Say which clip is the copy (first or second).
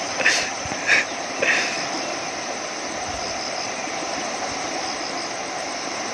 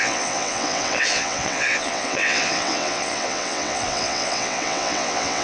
second